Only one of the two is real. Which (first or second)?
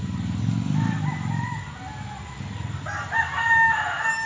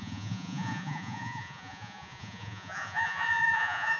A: first